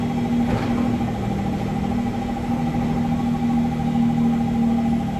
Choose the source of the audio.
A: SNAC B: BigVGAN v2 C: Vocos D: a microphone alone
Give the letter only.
D